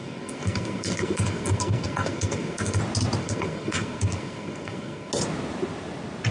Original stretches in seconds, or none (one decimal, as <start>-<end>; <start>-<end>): 2.8-3.2; 5.1-6.3